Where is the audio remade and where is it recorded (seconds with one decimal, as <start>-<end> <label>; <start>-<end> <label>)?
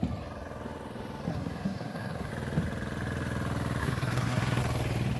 0.0-1.3 recorded; 1.3-2.3 remade; 2.3-3.8 recorded; 3.8-4.6 remade; 4.6-5.2 recorded